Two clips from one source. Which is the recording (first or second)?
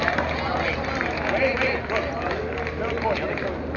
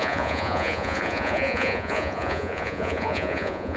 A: first